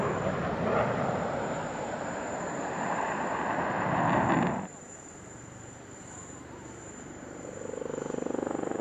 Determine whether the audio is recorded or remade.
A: remade